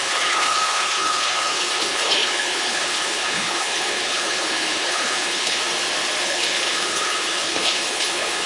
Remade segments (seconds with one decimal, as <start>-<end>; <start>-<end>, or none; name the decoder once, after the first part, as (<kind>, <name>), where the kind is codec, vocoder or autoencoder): 0.0-5.6 (codec, HILCodec); 6.2-8.5